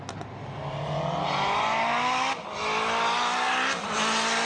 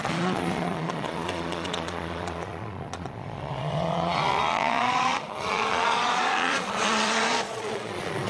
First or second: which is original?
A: first